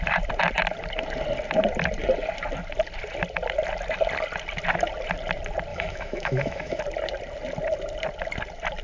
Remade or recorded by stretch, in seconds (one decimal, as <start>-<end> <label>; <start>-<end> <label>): 0.0-5.7 recorded; 5.7-6.8 remade; 6.8-8.8 recorded